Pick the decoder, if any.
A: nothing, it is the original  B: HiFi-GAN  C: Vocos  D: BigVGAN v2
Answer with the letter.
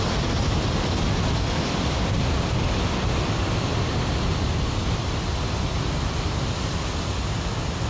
A